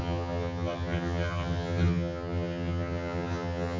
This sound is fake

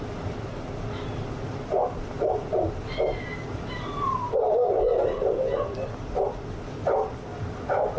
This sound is real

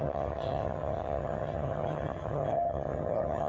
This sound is fake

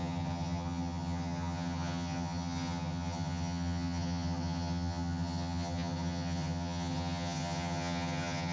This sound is fake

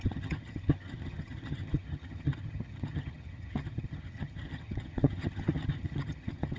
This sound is fake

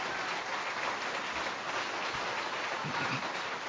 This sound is real